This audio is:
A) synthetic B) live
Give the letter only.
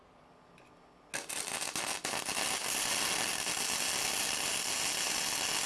B